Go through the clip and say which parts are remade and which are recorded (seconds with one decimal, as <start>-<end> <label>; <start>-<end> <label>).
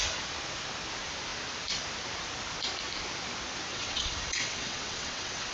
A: 0.0-3.7 recorded; 3.7-5.5 remade